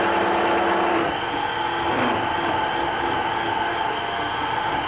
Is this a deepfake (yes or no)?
no